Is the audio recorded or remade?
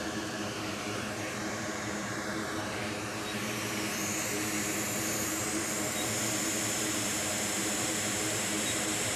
remade